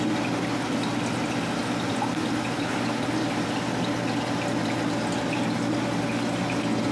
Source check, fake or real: real